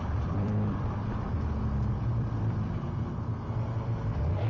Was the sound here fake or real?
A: fake